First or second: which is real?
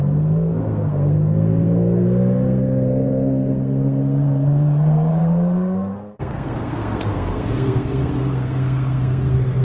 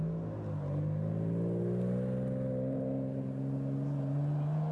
second